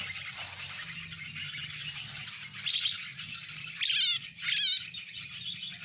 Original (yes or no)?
yes